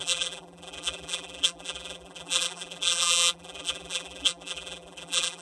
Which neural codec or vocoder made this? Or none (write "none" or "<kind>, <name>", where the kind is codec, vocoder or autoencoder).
vocoder, BigVGAN v2